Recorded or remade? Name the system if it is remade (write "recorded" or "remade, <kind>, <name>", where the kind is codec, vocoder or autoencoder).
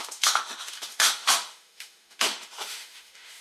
remade, autoencoder, DAC-VAE